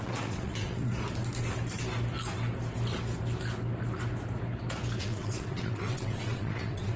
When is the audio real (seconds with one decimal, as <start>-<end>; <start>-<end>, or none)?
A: 0.8-5.0